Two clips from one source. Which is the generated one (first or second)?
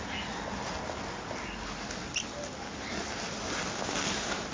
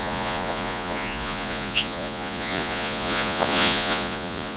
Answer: second